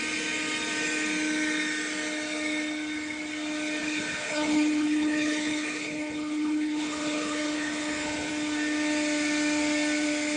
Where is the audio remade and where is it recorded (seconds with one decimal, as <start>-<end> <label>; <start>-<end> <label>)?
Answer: 0.0-3.8 recorded; 3.8-8.3 remade; 8.3-10.4 recorded